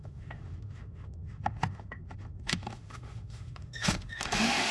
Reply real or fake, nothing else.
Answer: fake